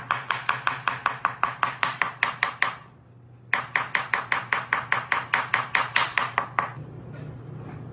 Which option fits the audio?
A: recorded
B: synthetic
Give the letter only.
A